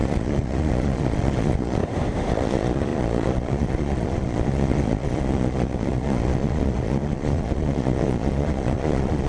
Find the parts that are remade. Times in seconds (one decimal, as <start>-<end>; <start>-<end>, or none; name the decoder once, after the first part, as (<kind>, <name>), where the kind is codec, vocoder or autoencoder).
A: 0.0-1.8 (vocoder, Vocos); 2.3-9.3